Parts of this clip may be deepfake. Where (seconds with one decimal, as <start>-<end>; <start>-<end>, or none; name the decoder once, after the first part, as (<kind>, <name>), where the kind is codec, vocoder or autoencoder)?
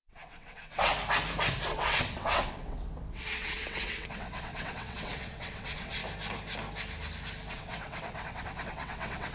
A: 0.0-0.9 (vocoder, WaveNeXt); 1.7-6.0; 7.5-9.3